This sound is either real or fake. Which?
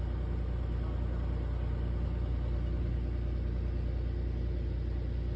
real